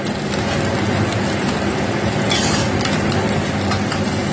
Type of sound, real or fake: real